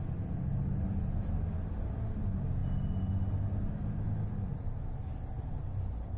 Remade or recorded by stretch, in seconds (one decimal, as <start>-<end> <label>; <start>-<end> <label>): 0.0-6.2 recorded